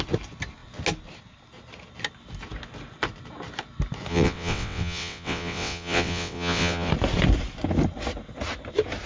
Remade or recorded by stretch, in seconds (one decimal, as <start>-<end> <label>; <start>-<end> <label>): 0.0-4.1 recorded; 4.1-6.9 remade; 6.9-9.1 recorded